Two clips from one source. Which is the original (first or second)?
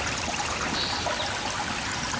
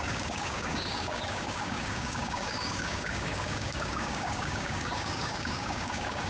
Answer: first